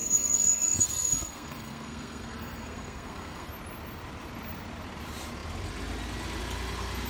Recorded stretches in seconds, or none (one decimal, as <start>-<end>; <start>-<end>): 3.5-7.1